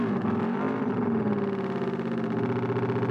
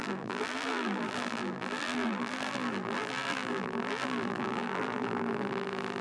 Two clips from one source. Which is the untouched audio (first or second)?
first